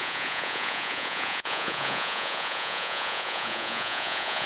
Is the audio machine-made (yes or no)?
yes